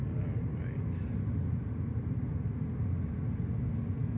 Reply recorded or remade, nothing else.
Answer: recorded